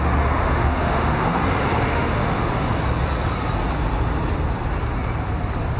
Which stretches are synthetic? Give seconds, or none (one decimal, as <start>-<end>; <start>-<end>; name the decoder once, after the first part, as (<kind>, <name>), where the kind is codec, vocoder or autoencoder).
0.4-1.4 (autoencoder, DAC-VAE); 1.9-2.5